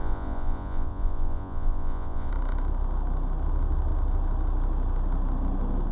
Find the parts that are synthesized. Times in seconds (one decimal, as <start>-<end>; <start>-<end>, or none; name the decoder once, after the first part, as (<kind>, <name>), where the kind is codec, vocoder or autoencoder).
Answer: 0.0-2.3 (vocoder, Vocos)